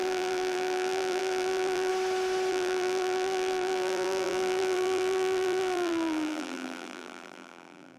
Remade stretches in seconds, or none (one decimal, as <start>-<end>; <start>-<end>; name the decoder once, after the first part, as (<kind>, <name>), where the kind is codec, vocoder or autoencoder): 0.0-1.9 (vocoder, BigVGAN v2); 2.5-8.0